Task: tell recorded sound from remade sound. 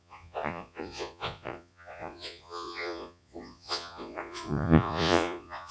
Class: remade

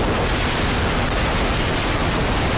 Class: recorded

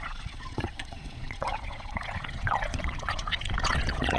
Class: remade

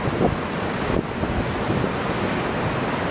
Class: recorded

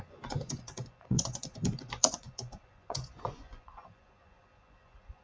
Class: remade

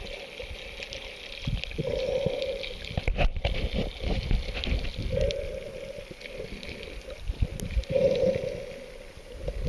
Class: recorded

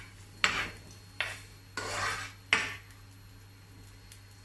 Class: recorded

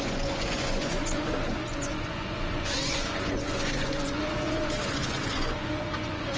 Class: remade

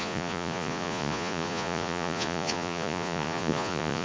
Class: remade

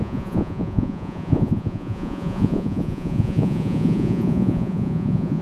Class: remade